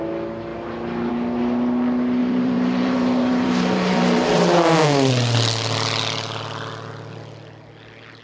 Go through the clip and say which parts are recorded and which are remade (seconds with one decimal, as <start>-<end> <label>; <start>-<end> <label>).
0.0-2.2 recorded; 2.2-5.1 remade; 5.1-8.2 recorded